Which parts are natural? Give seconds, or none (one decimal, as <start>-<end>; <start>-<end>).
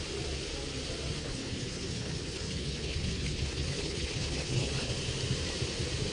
0.0-1.2; 4.9-6.1